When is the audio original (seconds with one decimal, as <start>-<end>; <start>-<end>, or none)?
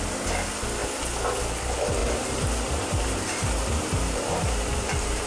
0.0-2.0